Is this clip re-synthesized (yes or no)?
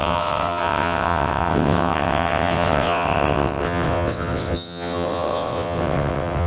yes